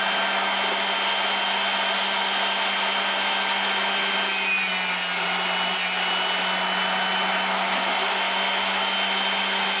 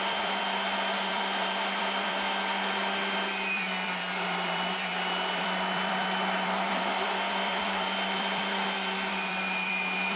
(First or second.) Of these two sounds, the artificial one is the second